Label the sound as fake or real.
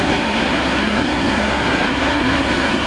fake